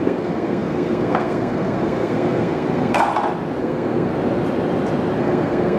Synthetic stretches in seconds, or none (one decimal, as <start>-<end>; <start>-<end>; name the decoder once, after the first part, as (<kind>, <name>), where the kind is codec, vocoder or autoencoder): 0.0-3.1 (codec, SNAC); 3.6-4.1; 5.2-5.8